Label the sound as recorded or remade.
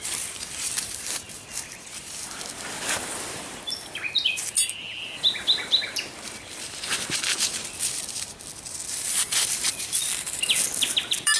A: remade